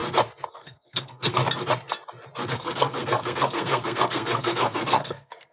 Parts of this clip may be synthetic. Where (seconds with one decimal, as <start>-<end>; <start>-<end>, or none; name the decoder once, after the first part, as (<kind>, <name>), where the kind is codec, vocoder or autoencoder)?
0.5-1.4 (codec, SNAC); 2.5-5.5